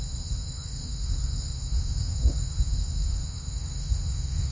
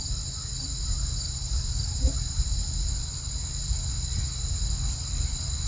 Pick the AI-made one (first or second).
first